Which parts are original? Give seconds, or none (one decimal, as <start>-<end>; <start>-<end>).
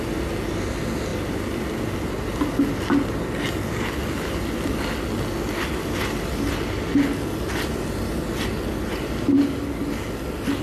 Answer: 0.0-10.6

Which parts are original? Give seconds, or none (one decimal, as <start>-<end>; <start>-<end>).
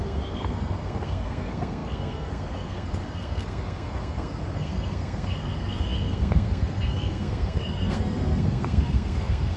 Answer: none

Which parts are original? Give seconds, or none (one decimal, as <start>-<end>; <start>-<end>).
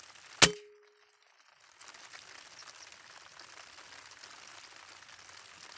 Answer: 0.0-5.8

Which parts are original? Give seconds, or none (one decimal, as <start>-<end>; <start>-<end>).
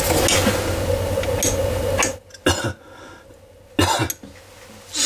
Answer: 0.0-5.1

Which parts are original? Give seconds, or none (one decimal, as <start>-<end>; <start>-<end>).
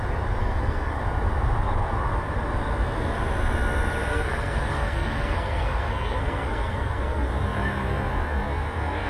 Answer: 0.0-0.4; 1.0-4.1; 7.3-9.1